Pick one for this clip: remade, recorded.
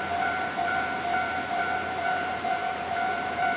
remade